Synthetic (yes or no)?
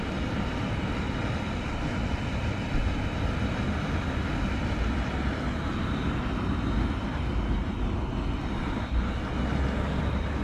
no